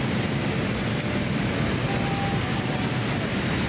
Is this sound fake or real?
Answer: real